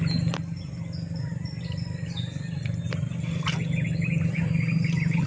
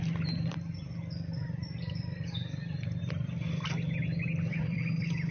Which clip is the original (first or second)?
first